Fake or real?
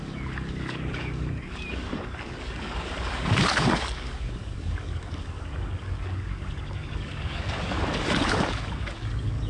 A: fake